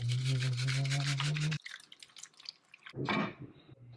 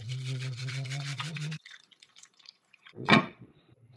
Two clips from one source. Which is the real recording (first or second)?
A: first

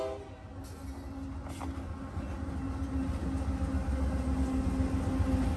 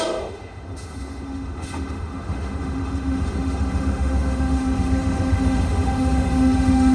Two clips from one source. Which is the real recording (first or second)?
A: first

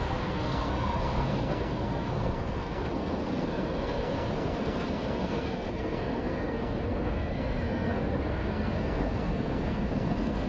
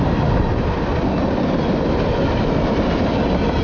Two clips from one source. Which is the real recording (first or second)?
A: second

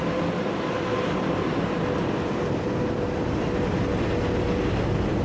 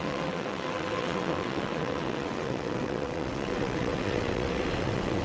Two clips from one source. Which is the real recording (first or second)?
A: first